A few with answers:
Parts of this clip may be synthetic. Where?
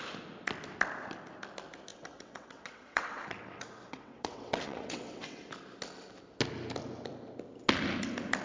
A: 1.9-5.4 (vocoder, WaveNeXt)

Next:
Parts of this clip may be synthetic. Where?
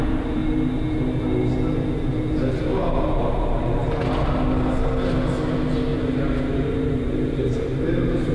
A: 0.0-0.4 (vocoder, BigVGAN v2); 3.2-3.8; 6.5-8.3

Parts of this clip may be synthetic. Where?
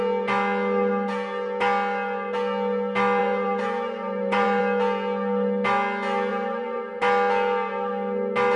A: 3.2-4.6 (vocoder, BigVGAN v2); 6.3-7.0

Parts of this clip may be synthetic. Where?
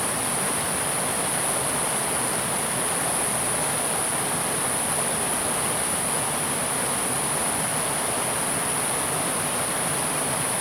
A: none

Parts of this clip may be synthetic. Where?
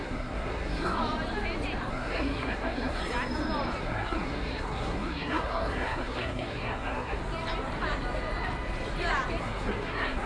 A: 0.0-1.0 (codec, SNAC); 1.9-3.0; 3.8-7.2; 9.4-10.3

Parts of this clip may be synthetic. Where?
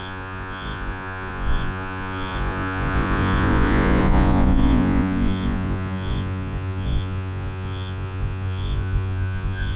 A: 0.0-9.8 (vocoder, Vocos)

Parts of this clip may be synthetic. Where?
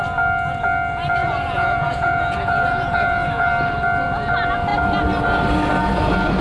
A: 1.2-3.5 (vocoder, Vocos)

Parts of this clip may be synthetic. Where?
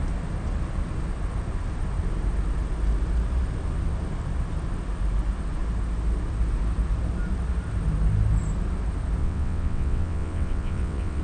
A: 9.2-11.2 (vocoder, WaveNeXt)